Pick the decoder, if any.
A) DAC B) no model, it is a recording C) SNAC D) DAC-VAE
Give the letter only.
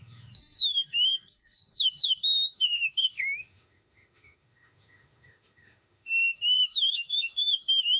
D